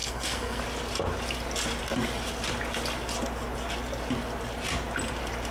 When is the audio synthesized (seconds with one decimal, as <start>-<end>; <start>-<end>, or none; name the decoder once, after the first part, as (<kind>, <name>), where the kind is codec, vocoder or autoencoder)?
0.0-0.6 (codec, SNAC)